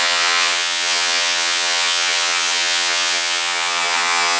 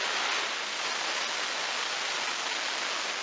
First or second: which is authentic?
second